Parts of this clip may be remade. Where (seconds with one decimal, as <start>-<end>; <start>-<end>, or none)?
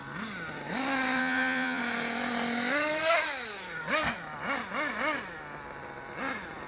1.2-1.8